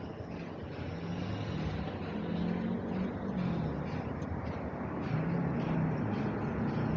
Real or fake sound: real